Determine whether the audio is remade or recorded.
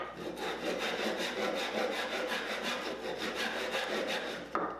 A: recorded